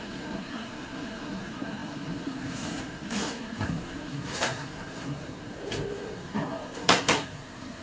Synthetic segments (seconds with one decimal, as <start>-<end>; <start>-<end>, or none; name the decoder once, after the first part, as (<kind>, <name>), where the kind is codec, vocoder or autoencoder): 0.0-7.8 (codec, SNAC)